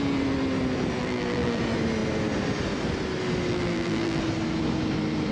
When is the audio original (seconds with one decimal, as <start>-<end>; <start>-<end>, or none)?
0.0-1.0; 1.6-3.5; 4.2-5.3